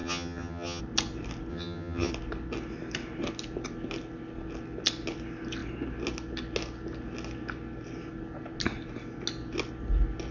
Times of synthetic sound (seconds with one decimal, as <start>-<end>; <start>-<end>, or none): 0.0-0.8; 1.5-2.1